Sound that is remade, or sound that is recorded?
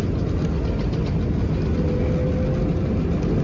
recorded